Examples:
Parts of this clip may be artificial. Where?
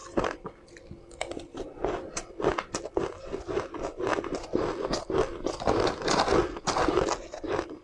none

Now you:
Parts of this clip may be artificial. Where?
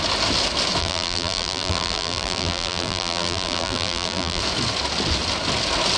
0.8-4.4 (vocoder, BigVGAN v2)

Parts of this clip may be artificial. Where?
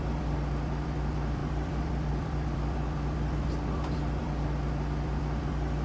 0.0-5.8 (vocoder, BigVGAN v2)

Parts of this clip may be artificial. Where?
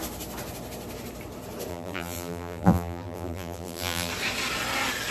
1.7-4.1 (vocoder, BigVGAN v2)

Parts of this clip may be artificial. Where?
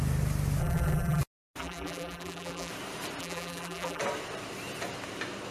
0.6-1.2 (vocoder, BigVGAN v2); 1.6-2.7; 3.2-4.0